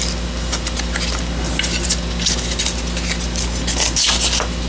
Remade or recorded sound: recorded